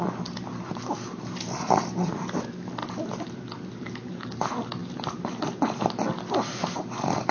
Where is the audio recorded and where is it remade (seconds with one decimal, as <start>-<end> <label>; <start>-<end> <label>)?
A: 0.0-7.3 recorded